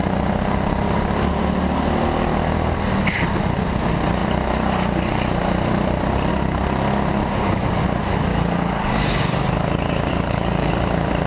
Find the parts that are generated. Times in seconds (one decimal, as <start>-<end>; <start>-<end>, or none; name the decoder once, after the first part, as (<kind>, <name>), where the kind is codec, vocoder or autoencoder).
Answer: 8.3-9.2 (codec, DAC); 10.1-10.7